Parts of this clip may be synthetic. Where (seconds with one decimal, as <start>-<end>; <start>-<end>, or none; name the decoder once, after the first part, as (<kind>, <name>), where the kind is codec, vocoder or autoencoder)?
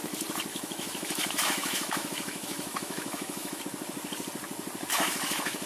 0.5-3.6 (autoencoder, DAC-VAE); 4.9-5.7